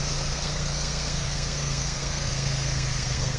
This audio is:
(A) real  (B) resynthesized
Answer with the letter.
B